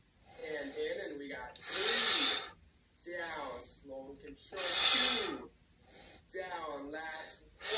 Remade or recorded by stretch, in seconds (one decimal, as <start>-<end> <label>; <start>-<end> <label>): 0.0-7.8 recorded